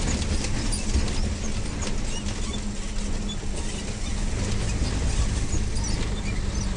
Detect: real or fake real